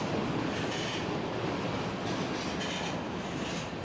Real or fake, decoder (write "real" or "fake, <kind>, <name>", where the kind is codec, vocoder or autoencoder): real